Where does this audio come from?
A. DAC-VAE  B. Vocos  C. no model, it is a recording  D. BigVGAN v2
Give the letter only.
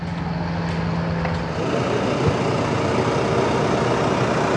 C